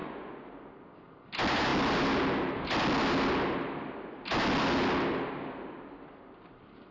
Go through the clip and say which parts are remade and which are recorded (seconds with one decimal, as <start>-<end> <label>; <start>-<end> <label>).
0.0-0.5 remade; 0.5-6.9 recorded

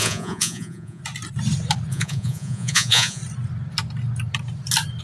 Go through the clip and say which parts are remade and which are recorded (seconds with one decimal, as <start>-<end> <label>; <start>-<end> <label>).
0.0-1.0 remade; 1.0-1.9 recorded; 1.9-3.2 remade; 3.2-5.0 recorded